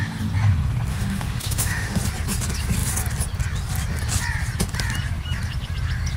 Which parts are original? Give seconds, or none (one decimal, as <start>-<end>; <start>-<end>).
0.0-0.9; 2.0-6.2